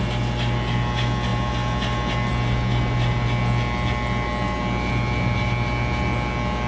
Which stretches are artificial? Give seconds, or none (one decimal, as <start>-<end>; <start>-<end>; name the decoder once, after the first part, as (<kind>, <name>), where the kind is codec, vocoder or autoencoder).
none